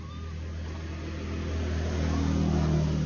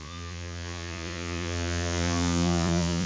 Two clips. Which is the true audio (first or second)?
first